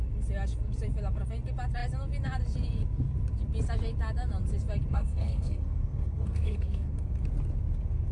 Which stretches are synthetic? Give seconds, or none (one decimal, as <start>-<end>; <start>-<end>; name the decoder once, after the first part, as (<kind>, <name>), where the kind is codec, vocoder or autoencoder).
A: 4.9-7.2 (codec, SNAC)